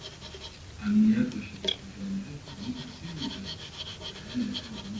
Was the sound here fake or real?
real